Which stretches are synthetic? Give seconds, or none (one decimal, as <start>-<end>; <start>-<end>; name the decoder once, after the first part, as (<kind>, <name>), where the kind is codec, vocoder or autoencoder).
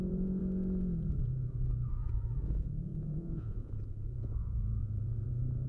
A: 0.0-0.4 (vocoder, Vocos); 1.2-5.7